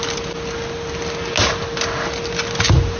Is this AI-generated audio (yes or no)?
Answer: no